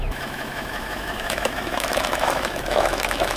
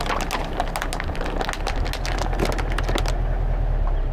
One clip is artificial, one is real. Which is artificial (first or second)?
first